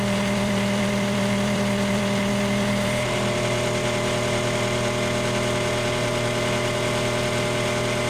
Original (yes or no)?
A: no